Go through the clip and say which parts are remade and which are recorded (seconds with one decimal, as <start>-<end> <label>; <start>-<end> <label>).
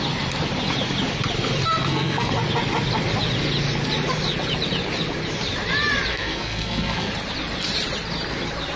0.0-1.8 recorded; 1.8-2.3 remade; 2.3-6.1 recorded; 6.1-7.1 remade; 7.1-8.8 recorded